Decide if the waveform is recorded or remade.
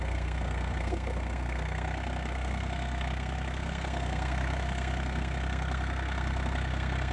remade